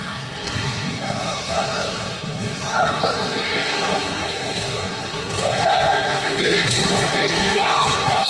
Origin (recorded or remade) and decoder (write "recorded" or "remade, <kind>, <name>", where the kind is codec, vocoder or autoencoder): remade, codec, SNAC